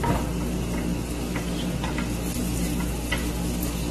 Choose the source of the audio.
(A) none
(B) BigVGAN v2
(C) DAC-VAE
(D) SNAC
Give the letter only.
A